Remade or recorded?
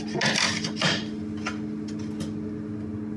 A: recorded